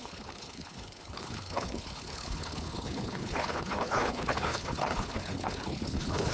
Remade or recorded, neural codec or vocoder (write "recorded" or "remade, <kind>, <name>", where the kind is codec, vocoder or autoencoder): remade, codec, HILCodec